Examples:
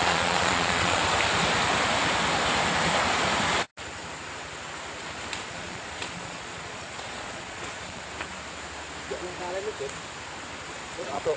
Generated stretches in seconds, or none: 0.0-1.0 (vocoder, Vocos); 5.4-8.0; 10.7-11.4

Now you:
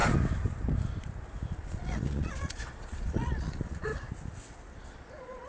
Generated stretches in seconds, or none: 1.5-3.9 (vocoder, Vocos); 4.9-5.5

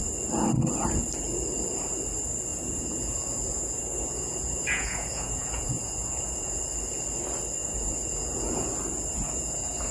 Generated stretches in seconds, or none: 2.5-6.6 (vocoder, Vocos); 7.6-8.7; 9.1-9.9

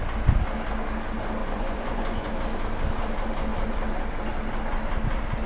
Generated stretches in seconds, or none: 1.4-2.3 (vocoder, Vocos)

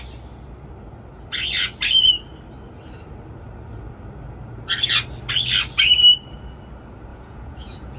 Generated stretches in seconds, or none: 7.1-8.0 (vocoder, Vocos)

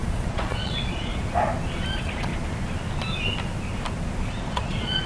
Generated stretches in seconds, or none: 0.0-1.1 (vocoder, Vocos); 1.9-2.3; 4.3-5.1

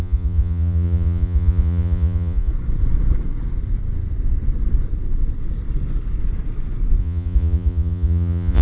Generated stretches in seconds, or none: 0.0-2.5 (vocoder, Vocos); 7.0-8.6